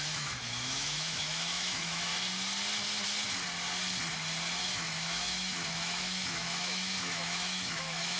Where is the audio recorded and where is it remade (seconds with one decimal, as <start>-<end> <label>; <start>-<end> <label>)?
0.0-2.1 remade; 2.1-4.6 recorded; 4.6-8.2 remade